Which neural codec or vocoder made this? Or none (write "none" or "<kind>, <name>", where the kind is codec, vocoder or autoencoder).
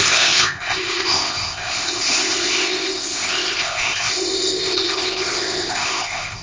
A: codec, ZipCodec